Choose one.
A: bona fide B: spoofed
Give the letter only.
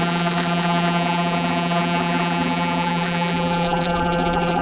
B